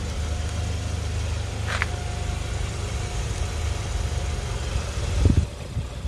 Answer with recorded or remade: recorded